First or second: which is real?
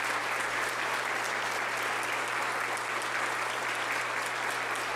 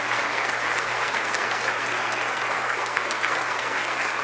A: first